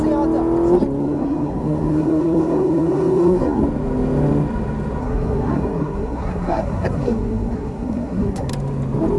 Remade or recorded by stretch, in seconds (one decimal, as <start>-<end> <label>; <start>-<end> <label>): 0.0-1.0 recorded; 1.0-3.6 remade; 3.6-5.0 recorded; 5.0-8.5 remade; 8.5-9.2 recorded